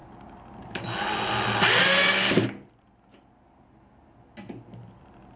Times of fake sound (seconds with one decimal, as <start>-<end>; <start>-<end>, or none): none